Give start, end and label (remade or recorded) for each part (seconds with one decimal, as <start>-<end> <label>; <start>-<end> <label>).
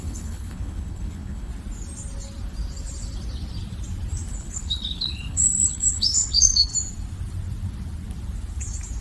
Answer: 0.0-1.5 remade; 1.5-4.3 recorded; 4.3-6.7 remade; 6.7-9.0 recorded